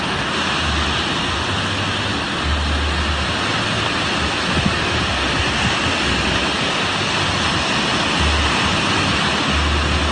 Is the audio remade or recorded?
recorded